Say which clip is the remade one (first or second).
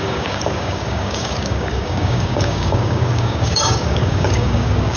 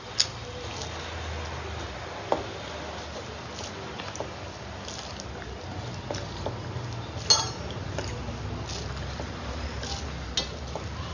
first